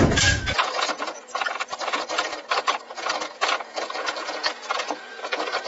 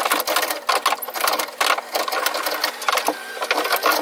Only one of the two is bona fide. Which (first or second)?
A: second